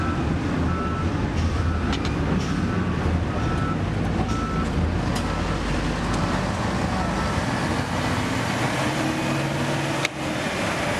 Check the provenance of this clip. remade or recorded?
recorded